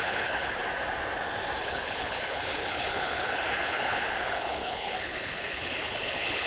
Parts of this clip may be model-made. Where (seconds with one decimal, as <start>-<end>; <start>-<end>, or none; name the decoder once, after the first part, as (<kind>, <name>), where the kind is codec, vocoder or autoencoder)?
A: 0.0-0.6 (codec, HILCodec); 1.6-6.5